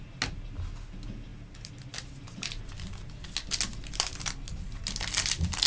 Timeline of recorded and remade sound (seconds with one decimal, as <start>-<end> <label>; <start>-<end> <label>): 0.0-5.7 recorded